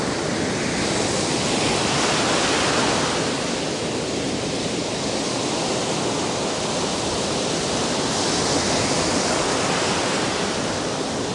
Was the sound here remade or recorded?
recorded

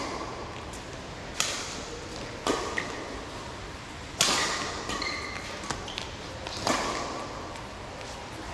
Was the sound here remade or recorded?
recorded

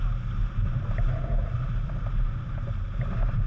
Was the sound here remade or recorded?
recorded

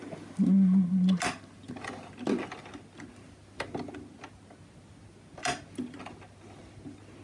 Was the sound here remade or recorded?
recorded